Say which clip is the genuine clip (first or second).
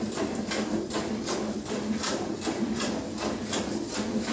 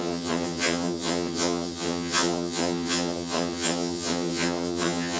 first